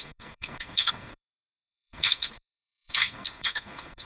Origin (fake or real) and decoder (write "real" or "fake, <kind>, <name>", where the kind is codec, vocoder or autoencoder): fake, codec, SNAC